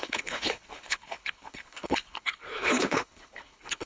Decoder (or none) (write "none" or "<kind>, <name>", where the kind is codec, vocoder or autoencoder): codec, HILCodec